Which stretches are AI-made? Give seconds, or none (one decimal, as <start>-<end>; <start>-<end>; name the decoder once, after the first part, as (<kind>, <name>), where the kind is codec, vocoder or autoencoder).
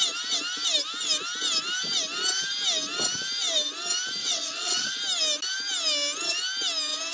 4.2-5.0 (vocoder, WaveNeXt)